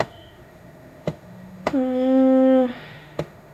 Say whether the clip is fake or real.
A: fake